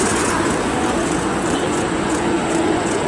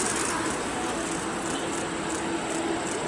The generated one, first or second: first